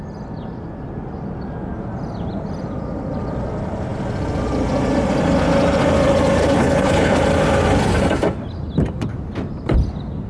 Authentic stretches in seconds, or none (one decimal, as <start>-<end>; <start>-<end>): 0.0-6.4; 7.2-10.3